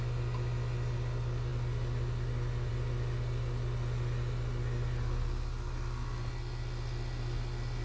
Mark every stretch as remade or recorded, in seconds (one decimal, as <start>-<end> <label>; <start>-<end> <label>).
0.0-7.8 recorded